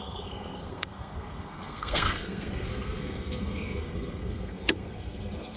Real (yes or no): no